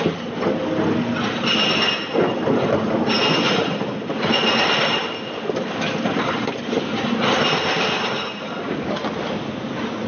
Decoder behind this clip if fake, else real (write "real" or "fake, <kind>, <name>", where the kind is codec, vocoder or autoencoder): real